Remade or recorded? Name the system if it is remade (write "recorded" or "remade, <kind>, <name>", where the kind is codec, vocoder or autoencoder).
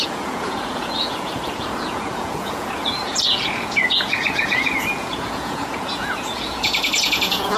remade, vocoder, Vocos